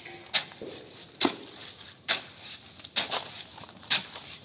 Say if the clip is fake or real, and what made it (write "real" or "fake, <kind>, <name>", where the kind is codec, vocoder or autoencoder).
real